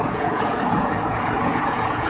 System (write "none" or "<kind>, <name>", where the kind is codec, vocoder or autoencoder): vocoder, Vocos